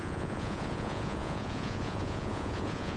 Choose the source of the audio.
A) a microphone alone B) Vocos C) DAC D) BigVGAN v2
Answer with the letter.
B